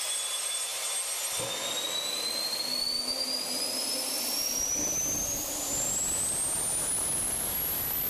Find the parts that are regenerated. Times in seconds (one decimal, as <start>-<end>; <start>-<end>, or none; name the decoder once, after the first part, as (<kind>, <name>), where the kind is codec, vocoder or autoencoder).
none